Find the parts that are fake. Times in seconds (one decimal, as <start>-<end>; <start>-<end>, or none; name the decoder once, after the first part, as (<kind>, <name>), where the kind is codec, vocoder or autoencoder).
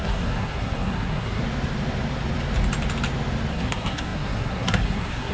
0.0-1.4 (codec, SNAC); 3.5-5.3